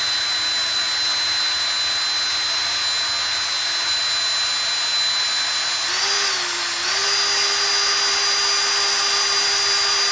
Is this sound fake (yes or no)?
no